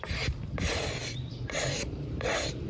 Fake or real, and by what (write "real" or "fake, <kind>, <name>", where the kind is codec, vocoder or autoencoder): fake, vocoder, BigVGAN v2